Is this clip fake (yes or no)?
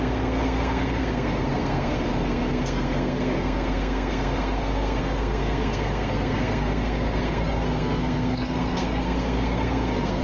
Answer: yes